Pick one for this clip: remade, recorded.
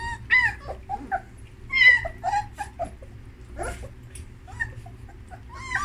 recorded